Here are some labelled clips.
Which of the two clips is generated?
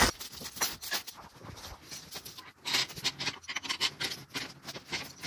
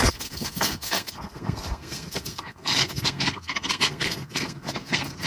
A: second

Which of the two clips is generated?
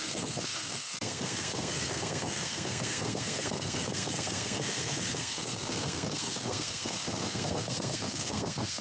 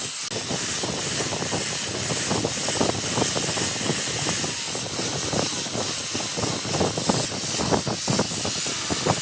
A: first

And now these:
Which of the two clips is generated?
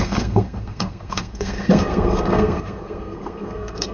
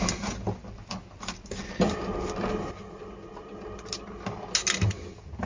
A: first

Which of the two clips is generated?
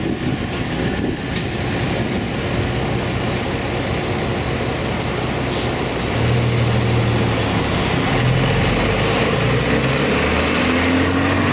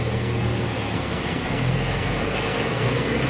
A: second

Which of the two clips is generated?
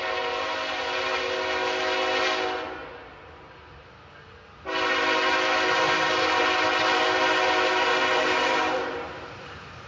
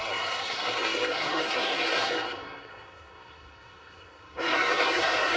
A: second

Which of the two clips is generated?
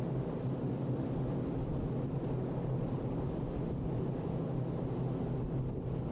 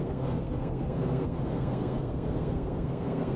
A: second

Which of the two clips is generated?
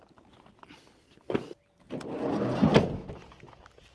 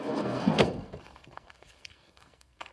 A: second